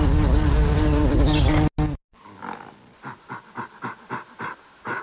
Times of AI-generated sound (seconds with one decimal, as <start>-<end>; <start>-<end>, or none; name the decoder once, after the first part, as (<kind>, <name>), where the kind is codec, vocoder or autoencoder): none